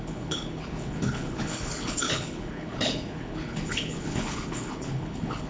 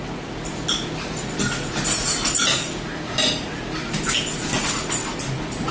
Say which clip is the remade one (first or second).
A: first